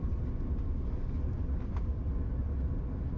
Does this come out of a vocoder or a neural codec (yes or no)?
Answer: no